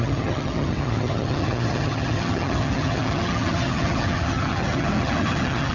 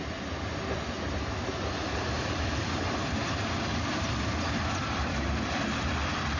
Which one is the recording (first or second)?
second